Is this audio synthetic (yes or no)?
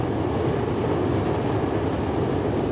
no